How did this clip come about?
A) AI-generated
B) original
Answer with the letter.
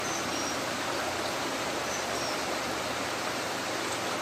B